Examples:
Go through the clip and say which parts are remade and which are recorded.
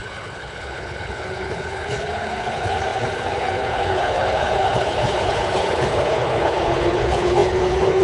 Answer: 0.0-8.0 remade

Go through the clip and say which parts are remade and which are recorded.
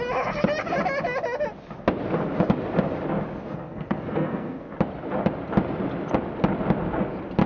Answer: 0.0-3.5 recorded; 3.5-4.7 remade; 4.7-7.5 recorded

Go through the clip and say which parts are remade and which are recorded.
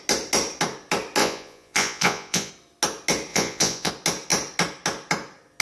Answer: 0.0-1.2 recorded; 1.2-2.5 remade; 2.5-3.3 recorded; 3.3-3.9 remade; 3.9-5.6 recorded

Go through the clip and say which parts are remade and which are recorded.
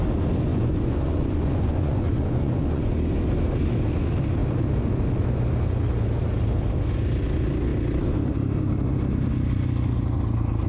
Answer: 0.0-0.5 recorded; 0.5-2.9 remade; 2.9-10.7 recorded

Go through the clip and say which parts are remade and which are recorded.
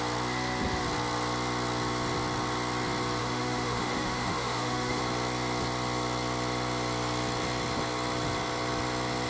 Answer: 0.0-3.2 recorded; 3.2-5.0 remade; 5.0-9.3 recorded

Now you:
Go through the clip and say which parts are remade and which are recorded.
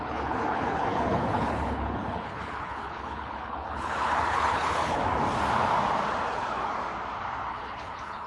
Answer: 0.0-5.0 remade; 5.0-6.3 recorded; 6.3-6.8 remade; 6.8-7.5 recorded; 7.5-8.3 remade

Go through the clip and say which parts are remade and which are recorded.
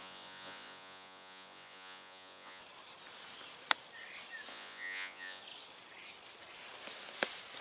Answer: 0.0-2.6 remade; 2.6-4.5 recorded; 4.5-5.4 remade; 5.4-7.6 recorded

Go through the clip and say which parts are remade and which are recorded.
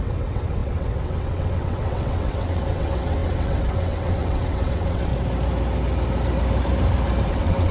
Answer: 0.0-5.1 remade; 5.1-7.3 recorded; 7.3-7.7 remade